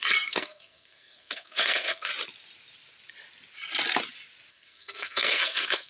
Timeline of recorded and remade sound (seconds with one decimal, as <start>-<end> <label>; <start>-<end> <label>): 0.0-2.1 remade; 2.1-4.5 recorded; 4.5-5.9 remade